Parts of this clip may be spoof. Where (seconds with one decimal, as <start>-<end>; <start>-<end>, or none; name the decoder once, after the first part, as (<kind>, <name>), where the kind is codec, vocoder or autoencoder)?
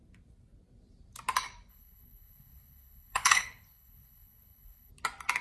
1.7-4.9 (codec, HILCodec)